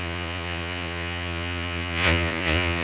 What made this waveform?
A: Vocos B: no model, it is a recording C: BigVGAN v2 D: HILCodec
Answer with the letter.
A